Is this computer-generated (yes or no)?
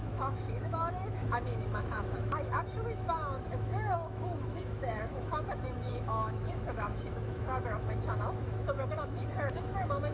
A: yes